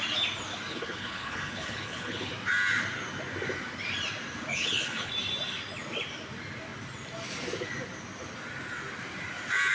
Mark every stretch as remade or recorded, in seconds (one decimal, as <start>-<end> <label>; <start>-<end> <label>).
0.0-0.7 recorded; 0.7-2.3 remade; 2.3-4.5 recorded; 4.5-5.1 remade; 5.1-9.7 recorded